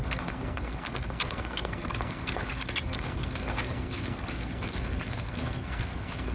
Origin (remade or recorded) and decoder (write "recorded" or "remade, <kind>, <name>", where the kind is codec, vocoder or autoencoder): remade, codec, SNAC